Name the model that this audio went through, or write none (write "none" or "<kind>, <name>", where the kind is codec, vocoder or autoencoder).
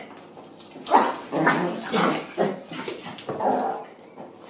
none